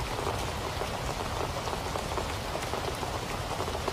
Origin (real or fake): real